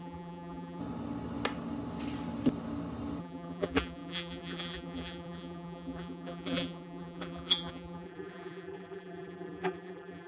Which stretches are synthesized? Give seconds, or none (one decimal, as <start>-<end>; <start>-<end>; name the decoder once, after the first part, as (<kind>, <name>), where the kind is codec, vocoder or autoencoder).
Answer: 0.0-0.8 (vocoder, BigVGAN v2); 3.2-10.3